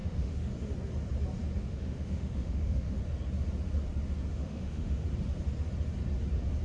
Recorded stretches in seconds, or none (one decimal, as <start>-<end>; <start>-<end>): 0.5-1.6; 3.0-4.3; 5.0-6.6